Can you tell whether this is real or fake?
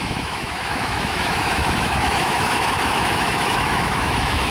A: fake